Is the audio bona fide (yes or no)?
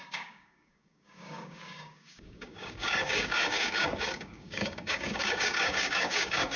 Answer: no